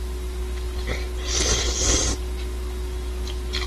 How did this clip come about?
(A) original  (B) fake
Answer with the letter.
A